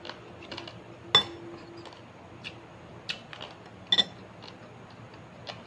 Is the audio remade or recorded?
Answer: recorded